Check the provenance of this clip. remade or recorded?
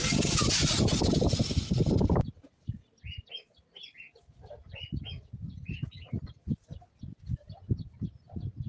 recorded